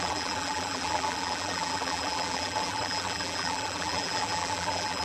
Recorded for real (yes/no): no